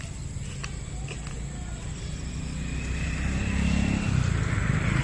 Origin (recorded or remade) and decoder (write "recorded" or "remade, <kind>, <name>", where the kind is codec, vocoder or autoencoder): recorded